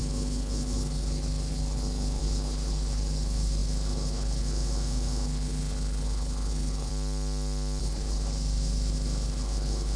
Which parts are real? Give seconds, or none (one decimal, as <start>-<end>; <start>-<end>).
6.9-7.8